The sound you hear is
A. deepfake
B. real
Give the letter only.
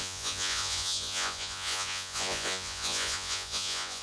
A